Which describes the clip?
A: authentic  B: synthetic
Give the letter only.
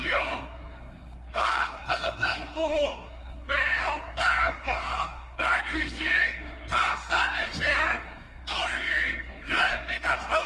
B